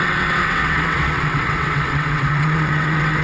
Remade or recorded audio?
remade